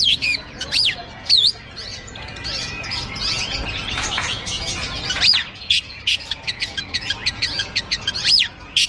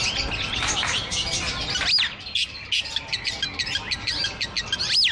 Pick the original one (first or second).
second